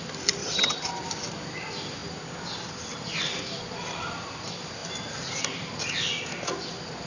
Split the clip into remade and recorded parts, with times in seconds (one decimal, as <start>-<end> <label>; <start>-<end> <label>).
0.0-0.4 recorded; 0.4-0.9 remade; 0.9-7.1 recorded